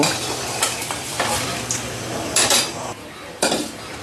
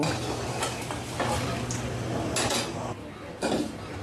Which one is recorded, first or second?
second